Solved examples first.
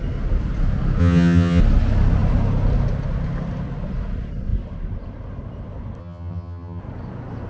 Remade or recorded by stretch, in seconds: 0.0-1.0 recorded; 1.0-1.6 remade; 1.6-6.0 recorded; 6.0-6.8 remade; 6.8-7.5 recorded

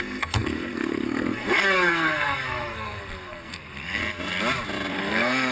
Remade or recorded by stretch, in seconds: 0.0-4.0 remade; 4.0-4.9 recorded; 4.9-5.5 remade